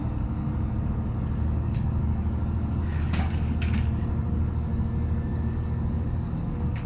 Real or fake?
fake